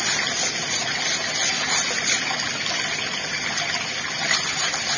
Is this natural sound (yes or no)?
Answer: yes